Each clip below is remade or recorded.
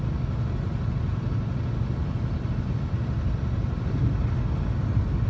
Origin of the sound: recorded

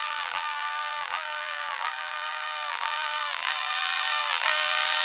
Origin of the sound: remade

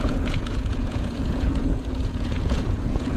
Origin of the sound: remade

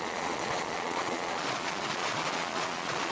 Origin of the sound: remade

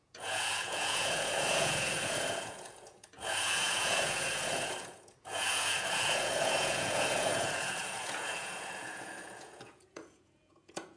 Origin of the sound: remade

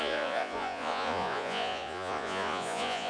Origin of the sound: remade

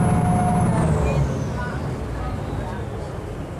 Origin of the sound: recorded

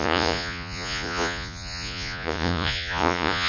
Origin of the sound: remade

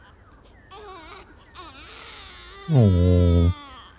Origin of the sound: recorded